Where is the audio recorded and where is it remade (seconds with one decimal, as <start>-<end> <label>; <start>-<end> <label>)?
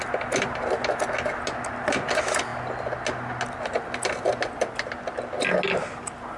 0.0-6.4 recorded